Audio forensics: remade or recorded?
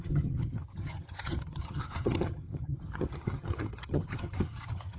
remade